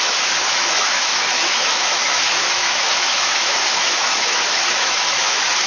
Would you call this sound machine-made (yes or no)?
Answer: yes